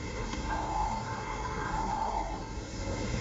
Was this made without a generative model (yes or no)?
no